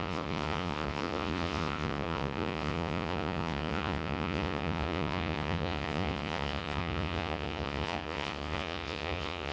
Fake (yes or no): yes